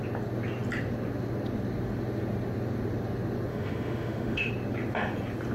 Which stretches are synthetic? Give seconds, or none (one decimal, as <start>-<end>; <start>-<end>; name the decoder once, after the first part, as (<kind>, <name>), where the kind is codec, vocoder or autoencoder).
3.5-4.5 (autoencoder, DAC-VAE)